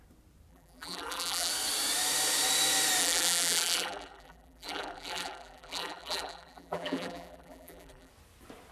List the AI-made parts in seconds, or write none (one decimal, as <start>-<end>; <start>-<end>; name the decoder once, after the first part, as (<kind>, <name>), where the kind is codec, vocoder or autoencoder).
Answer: 0.5-1.5 (vocoder, BigVGAN v2); 3.0-8.1